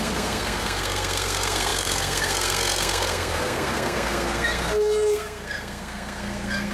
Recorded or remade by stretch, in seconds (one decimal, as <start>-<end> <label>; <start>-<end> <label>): 0.0-6.7 remade